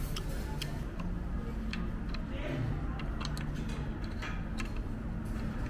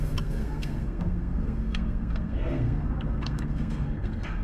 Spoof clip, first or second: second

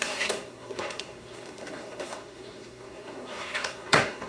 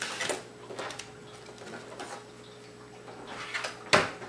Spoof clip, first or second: first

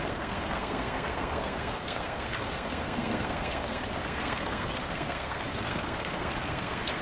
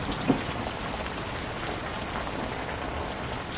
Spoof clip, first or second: first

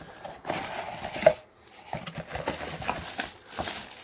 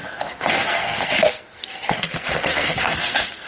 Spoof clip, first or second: second